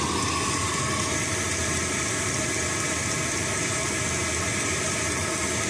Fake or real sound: real